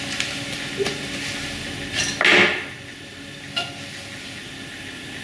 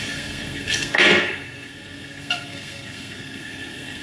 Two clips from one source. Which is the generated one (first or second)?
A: second